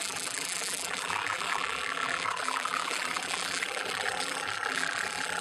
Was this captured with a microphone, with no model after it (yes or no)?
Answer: no